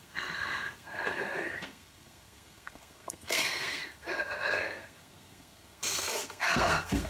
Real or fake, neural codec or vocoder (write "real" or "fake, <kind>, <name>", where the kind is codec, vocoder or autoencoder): fake, codec, SNAC